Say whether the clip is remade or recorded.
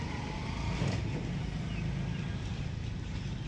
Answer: recorded